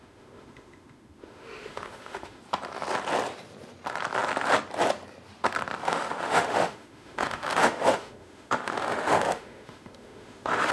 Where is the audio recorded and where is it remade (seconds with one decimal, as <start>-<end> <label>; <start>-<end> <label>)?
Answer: 0.0-2.4 remade; 2.4-5.8 recorded; 5.8-10.7 remade